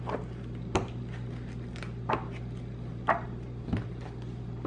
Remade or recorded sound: recorded